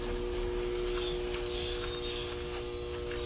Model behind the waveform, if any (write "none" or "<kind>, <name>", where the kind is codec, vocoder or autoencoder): none